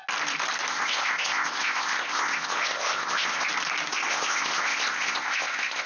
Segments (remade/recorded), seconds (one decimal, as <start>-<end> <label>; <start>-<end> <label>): 0.0-0.7 recorded; 0.7-3.5 remade; 3.5-3.9 recorded; 3.9-5.9 remade